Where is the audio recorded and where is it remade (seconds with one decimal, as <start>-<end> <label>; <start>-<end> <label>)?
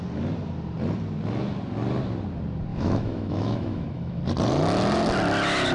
0.0-2.7 recorded; 2.7-4.2 remade; 4.2-5.7 recorded